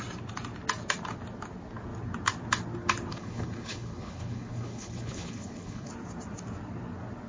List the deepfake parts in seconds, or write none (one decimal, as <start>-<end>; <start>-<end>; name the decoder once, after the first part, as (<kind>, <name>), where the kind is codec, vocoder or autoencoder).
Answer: 3.1-5.9 (codec, HILCodec)